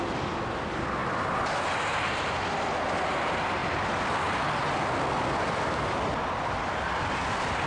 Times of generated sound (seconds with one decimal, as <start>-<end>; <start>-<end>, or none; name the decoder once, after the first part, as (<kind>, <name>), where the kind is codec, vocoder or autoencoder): none